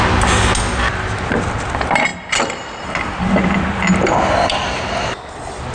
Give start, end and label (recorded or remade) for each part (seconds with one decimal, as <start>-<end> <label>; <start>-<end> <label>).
0.0-5.7 recorded